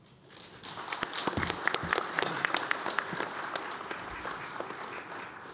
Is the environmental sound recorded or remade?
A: recorded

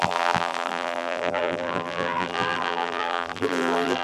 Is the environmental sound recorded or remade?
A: remade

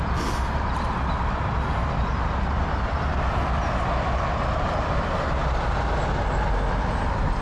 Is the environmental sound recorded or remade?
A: recorded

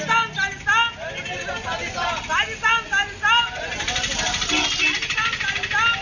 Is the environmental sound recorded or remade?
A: recorded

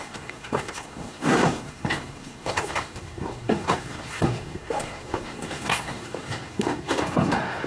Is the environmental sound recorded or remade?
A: remade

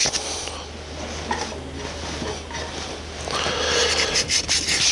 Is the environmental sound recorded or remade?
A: recorded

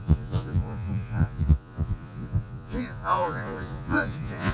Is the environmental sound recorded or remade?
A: remade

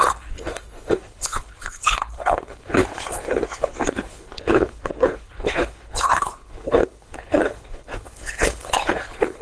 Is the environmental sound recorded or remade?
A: remade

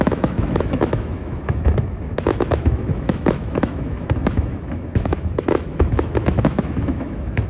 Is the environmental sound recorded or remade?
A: remade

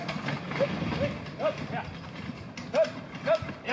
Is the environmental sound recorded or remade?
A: recorded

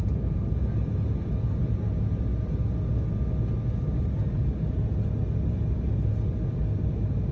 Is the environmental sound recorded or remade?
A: recorded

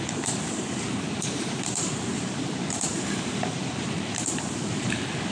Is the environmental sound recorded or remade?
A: remade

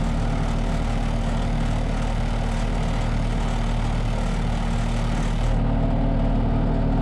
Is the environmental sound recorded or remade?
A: recorded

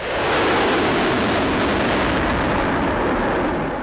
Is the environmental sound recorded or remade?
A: recorded